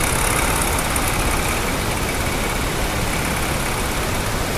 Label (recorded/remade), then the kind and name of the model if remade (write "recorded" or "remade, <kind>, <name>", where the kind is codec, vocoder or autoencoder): recorded